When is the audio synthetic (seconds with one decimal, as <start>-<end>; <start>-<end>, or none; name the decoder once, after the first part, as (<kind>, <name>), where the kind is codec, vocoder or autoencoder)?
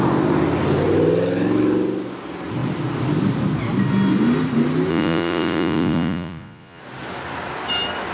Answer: 4.9-6.8 (vocoder, Vocos)